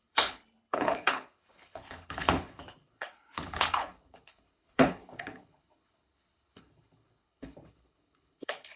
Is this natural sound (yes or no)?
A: no